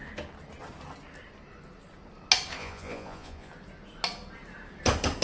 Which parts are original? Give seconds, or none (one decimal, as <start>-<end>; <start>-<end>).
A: 0.0-2.6; 3.5-5.2